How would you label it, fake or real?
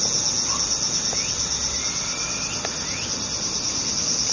real